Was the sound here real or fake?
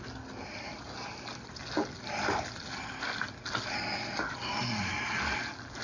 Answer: real